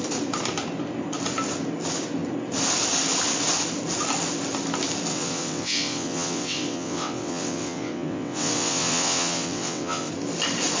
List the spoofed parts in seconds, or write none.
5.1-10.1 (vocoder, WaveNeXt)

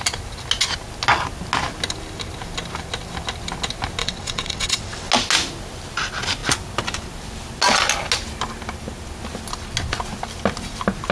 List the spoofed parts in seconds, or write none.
4.0-5.1 (vocoder, WaveNeXt)

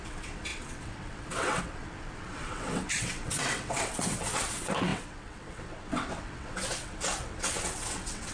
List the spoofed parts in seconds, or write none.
0.0-8.3 (vocoder, WaveNeXt)

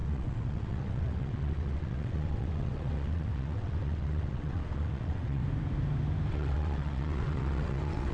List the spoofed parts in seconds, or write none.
0.0-5.4 (vocoder, WaveNeXt); 6.3-8.1

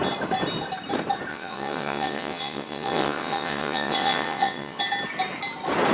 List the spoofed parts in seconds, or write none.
1.3-4.8 (vocoder, WaveNeXt)